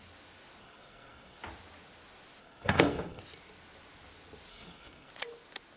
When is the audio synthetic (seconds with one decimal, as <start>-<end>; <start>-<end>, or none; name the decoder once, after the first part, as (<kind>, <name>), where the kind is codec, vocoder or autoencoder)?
0.6-1.4 (codec, SNAC); 2.4-3.2; 4.5-5.1